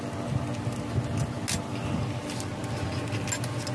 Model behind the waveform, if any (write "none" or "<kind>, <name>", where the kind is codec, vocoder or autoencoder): none